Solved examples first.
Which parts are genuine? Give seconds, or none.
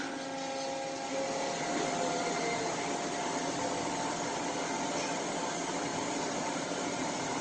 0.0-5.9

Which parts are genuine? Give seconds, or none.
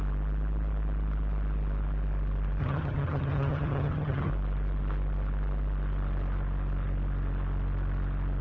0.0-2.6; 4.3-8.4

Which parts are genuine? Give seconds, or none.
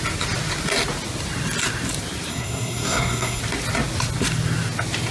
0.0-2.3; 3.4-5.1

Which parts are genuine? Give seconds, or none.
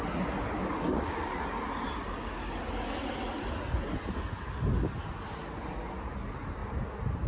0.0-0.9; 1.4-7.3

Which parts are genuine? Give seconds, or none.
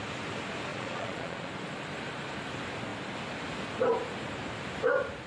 0.0-0.7; 1.5-5.3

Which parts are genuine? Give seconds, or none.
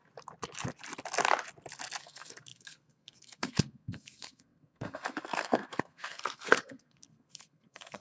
0.0-2.0